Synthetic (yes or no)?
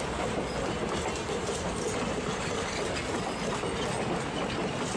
no